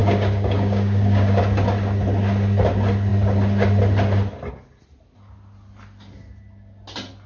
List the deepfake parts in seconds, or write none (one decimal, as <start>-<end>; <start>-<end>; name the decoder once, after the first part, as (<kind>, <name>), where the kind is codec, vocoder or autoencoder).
0.0-1.4 (codec, DAC)